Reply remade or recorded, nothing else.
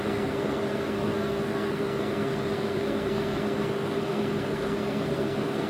remade